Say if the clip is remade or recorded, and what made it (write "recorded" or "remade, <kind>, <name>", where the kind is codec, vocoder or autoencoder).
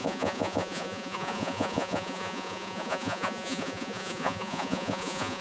remade, vocoder, Vocos